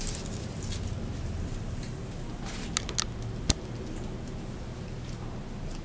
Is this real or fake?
real